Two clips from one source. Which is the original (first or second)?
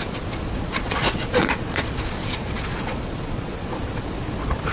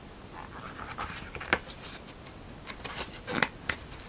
second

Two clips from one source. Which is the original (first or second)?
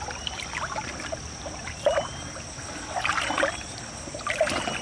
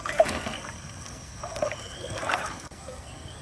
first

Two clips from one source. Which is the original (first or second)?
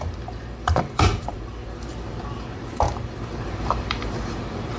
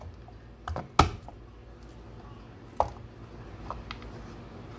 second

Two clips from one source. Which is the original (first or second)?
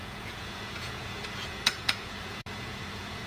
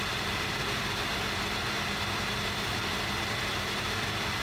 second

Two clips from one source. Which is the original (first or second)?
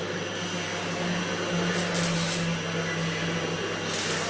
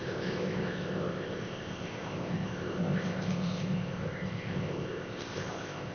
first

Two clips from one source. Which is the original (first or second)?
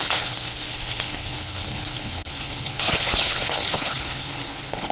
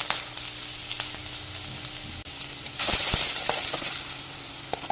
second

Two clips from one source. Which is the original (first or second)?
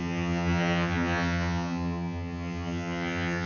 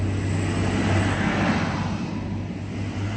second